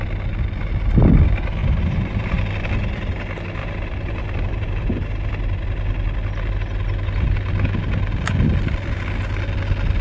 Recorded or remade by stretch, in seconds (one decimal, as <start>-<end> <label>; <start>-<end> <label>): 0.0-1.6 recorded; 1.6-2.4 remade; 2.4-3.6 recorded; 3.6-4.9 remade; 4.9-10.0 recorded